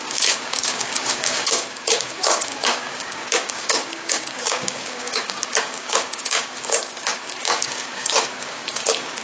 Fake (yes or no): yes